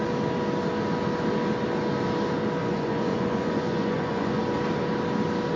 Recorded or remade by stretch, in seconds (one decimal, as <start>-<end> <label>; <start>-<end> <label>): 0.0-2.6 recorded; 2.6-4.4 remade; 4.4-5.6 recorded